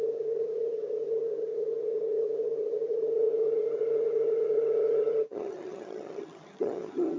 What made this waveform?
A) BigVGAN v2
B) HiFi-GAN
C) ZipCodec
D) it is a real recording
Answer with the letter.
B